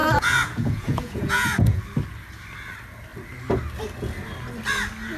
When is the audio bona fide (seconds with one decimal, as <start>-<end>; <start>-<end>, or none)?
1.8-5.2